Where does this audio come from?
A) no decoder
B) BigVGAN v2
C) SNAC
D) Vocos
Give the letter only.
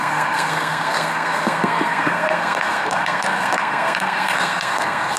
C